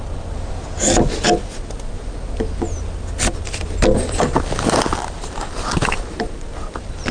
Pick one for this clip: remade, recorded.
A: recorded